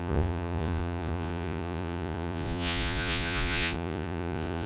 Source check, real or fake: fake